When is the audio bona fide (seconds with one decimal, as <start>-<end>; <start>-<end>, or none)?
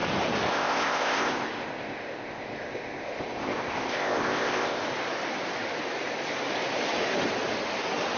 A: 0.0-0.5; 4.8-8.2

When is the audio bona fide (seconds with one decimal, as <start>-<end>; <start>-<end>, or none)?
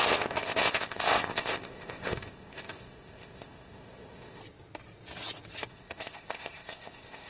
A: 4.4-5.7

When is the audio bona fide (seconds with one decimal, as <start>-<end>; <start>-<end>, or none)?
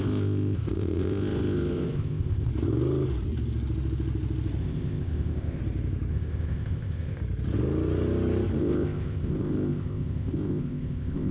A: 2.5-4.6; 5.6-6.1; 7.2-8.6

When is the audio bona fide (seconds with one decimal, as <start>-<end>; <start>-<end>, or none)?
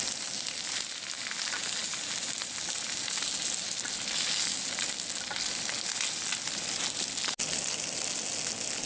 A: 0.0-8.9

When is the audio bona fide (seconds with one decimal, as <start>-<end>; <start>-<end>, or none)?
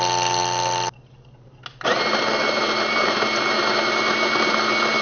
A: 0.0-5.0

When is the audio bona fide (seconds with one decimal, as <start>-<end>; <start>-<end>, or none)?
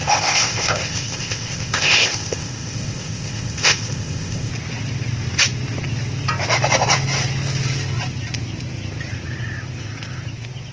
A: 4.5-10.7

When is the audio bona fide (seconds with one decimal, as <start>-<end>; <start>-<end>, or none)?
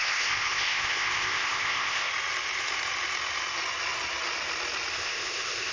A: 2.1-4.9